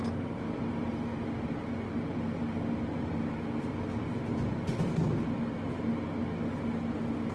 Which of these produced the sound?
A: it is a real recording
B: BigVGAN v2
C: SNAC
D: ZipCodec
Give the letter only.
A